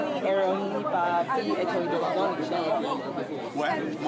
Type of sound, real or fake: real